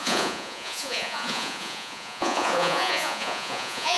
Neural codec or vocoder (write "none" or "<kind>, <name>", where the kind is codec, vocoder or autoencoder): vocoder, Vocos